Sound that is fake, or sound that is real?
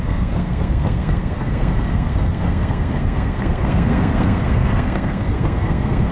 fake